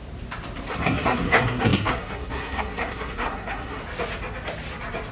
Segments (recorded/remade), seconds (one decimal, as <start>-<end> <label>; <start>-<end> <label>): 0.0-0.7 recorded; 0.7-3.8 remade; 3.8-5.1 recorded